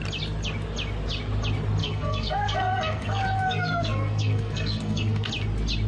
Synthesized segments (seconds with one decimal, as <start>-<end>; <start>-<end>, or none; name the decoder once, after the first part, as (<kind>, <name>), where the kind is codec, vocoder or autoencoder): 1.8-5.3 (codec, SNAC)